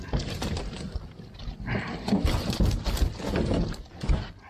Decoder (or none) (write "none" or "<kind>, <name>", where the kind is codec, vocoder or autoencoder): none